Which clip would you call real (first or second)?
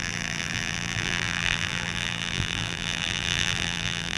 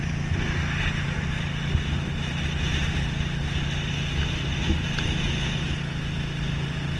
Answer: second